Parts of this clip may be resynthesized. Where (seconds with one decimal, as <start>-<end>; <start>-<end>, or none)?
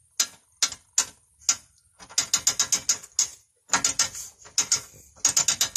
none